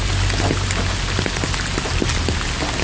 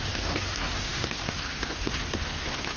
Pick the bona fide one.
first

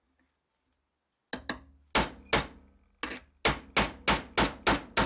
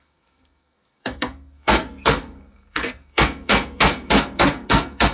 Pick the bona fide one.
first